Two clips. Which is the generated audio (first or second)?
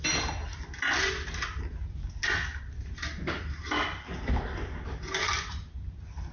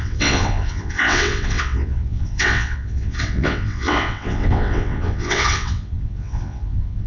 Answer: second